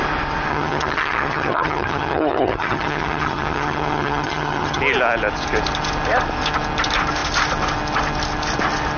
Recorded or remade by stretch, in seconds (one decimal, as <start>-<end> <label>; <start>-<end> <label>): 0.0-0.5 recorded; 0.5-4.8 remade; 4.8-9.0 recorded